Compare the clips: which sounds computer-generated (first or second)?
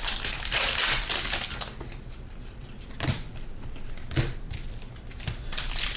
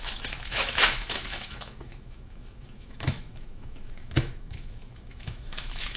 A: second